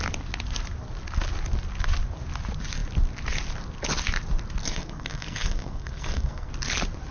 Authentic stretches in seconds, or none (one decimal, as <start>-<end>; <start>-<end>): 0.0-4.6; 6.5-7.1